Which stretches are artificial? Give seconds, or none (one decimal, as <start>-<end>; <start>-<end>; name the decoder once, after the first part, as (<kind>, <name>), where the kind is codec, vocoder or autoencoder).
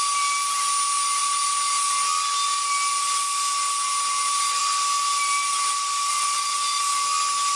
6.1-6.8 (vocoder, Vocos)